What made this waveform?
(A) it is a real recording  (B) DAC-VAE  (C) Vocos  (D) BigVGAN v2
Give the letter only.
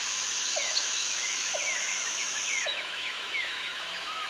B